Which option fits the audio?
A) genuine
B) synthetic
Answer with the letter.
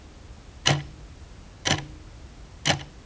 A